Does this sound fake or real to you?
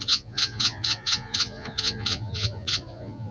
fake